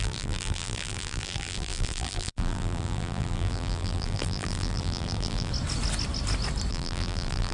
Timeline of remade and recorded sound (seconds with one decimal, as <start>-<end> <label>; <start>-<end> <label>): 0.0-5.5 remade; 5.5-6.7 recorded; 6.7-7.5 remade